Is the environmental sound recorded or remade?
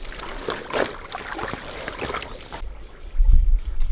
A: recorded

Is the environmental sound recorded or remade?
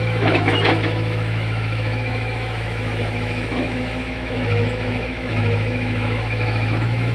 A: remade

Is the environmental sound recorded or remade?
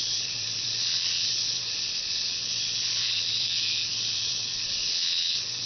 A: remade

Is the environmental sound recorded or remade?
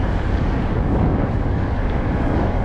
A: remade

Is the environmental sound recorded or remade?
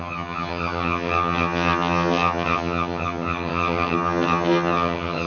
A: remade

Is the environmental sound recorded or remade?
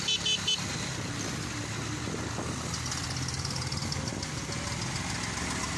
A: recorded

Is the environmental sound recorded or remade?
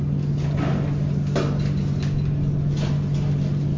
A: recorded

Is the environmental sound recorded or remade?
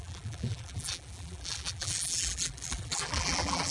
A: remade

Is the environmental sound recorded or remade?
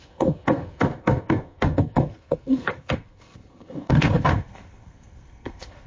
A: remade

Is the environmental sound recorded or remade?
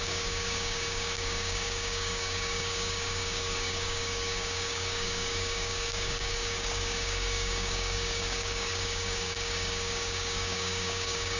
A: remade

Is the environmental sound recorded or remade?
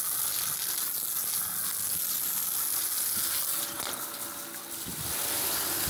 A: recorded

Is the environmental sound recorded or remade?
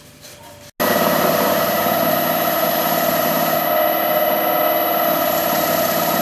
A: recorded